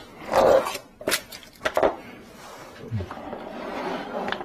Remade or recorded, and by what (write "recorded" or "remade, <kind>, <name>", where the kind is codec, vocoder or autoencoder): recorded